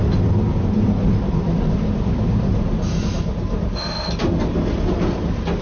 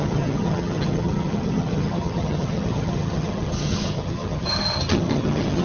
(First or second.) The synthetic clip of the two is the second